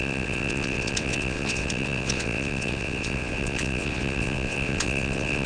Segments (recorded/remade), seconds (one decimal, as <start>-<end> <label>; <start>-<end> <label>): 0.0-5.5 remade